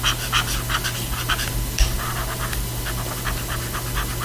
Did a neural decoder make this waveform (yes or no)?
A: no